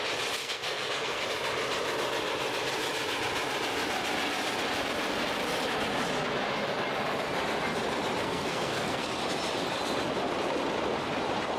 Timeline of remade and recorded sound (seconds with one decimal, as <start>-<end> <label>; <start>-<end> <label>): 0.0-0.4 recorded; 0.4-1.2 remade; 1.2-8.2 recorded; 8.2-9.2 remade; 9.2-11.6 recorded